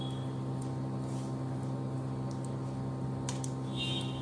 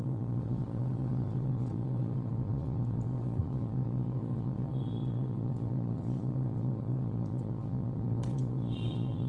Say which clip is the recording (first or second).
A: first